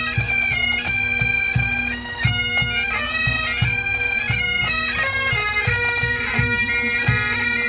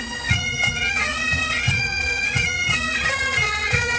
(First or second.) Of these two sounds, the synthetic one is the second